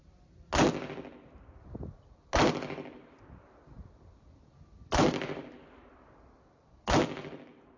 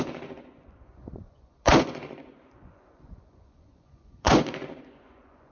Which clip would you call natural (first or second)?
first